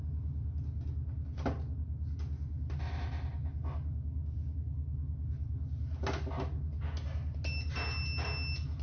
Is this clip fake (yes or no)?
no